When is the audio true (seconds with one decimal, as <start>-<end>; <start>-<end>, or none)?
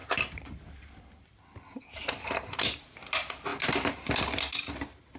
0.0-5.2